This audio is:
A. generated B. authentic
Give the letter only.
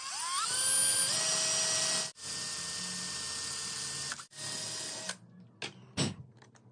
B